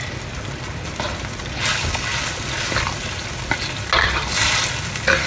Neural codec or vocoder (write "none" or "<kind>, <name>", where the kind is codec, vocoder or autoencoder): none